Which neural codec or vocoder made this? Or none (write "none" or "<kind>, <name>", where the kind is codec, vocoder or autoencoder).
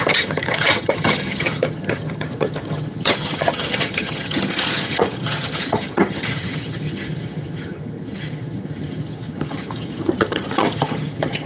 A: vocoder, HiFi-GAN